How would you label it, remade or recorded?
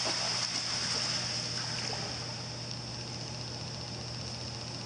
recorded